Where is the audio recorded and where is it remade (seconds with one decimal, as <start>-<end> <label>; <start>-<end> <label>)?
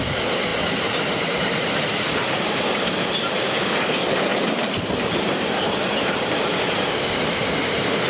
0.0-0.5 recorded; 0.5-1.8 remade; 1.8-4.3 recorded; 4.3-7.6 remade; 7.6-8.1 recorded